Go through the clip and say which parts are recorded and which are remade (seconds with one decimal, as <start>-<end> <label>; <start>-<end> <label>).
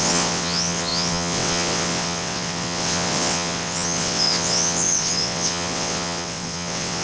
0.0-7.0 remade